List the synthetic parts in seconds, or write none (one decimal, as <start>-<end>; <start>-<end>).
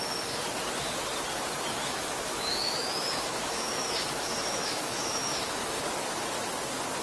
1.8-5.6